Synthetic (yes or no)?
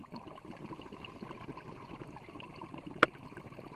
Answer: no